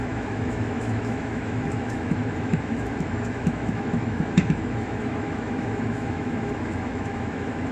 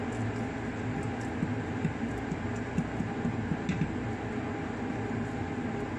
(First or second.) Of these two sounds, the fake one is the first